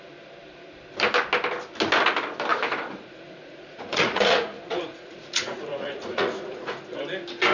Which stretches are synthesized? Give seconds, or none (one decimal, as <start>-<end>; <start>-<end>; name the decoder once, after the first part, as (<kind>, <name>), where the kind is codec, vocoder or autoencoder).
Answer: 2.5-7.0 (vocoder, Vocos)